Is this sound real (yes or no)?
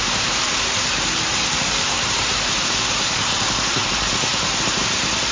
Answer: no